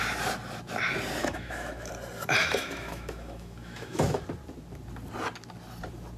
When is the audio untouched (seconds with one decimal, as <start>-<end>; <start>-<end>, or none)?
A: 0.0-1.2; 1.9-2.4; 4.2-6.2